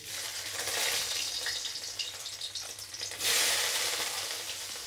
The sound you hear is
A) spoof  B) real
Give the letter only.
A